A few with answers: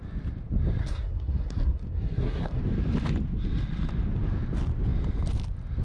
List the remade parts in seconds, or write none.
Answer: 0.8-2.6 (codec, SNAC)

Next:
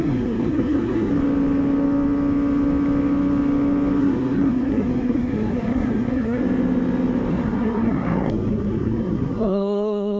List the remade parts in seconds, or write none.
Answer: 0.0-1.1 (codec, SNAC); 4.0-6.4; 7.3-10.2